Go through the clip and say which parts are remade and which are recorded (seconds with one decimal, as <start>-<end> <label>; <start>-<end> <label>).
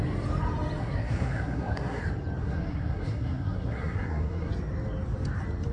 0.0-0.8 recorded; 0.8-2.0 remade; 2.0-2.4 recorded; 2.4-4.5 remade; 4.5-5.7 recorded